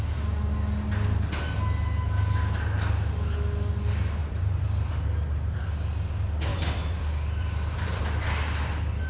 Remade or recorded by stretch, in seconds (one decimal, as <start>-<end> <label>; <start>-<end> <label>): 0.0-4.2 recorded; 4.2-4.9 remade; 4.9-6.5 recorded; 6.5-8.6 remade; 8.6-9.1 recorded